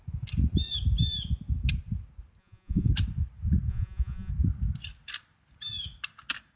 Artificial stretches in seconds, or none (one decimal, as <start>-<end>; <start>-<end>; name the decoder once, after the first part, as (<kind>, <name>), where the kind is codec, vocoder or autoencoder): 2.4-2.9 (vocoder, Vocos); 3.7-4.3

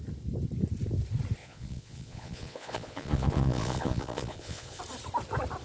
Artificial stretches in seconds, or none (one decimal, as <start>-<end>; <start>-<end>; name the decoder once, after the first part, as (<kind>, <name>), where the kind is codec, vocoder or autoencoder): 1.4-4.8 (vocoder, Vocos)

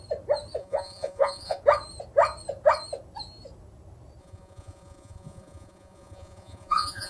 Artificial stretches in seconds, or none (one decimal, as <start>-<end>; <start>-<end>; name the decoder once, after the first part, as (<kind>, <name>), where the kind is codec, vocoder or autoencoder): 0.6-1.6 (vocoder, Vocos); 4.2-7.1

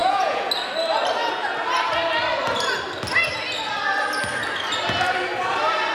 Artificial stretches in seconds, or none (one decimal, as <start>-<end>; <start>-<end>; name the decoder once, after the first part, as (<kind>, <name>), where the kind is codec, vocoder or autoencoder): 0.0-0.5 (vocoder, Vocos)

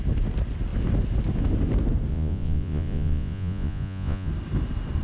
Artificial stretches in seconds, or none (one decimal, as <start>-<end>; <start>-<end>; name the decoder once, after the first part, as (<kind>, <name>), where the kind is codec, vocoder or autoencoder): 2.1-4.3 (vocoder, Vocos)

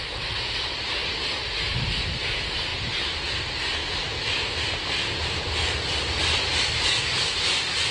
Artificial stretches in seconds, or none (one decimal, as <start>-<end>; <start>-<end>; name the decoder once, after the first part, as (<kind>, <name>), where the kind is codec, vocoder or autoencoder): none